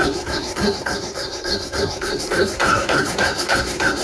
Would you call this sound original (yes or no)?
no